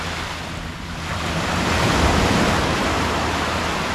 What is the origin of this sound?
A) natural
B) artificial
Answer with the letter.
A